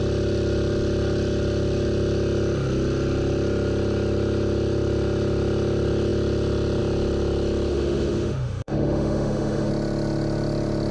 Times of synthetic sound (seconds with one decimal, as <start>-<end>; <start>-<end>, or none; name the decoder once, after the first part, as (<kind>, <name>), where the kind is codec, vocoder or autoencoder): 7.7-9.7 (autoencoder, DAC-VAE)